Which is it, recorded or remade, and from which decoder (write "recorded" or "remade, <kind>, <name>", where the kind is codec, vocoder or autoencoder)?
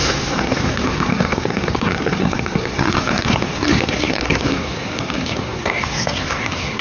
remade, codec, SNAC